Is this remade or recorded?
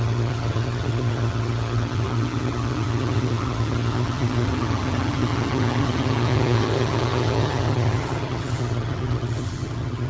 remade